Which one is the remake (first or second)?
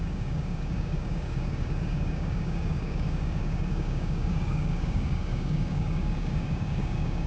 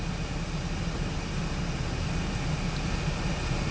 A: first